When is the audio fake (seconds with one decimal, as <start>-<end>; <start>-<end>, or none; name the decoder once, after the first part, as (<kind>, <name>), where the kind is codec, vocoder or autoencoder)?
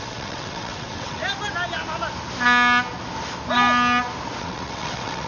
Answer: 0.0-1.2 (vocoder, WaveNeXt); 4.4-5.3